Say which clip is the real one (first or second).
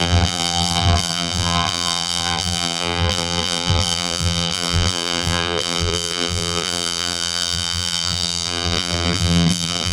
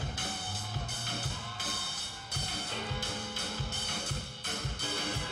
second